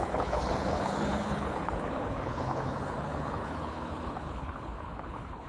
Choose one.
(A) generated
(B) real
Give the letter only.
A